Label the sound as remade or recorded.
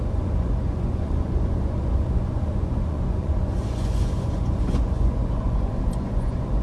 remade